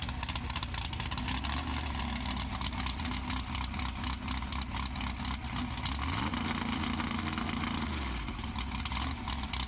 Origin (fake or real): real